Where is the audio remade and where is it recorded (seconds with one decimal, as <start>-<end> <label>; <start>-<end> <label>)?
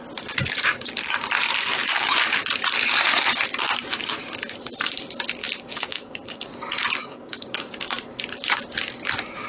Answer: 0.0-1.9 recorded; 1.9-2.4 remade; 2.4-5.4 recorded; 5.4-6.4 remade; 6.4-7.0 recorded; 7.0-7.7 remade; 7.7-9.5 recorded